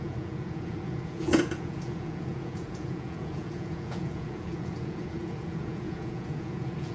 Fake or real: fake